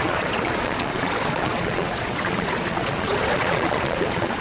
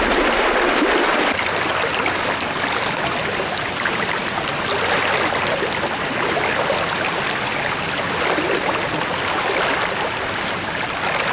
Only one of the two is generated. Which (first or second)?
first